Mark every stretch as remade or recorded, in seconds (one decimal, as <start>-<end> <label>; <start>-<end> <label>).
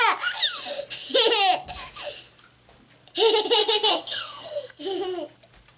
0.0-3.6 recorded; 3.6-4.8 remade; 4.8-5.8 recorded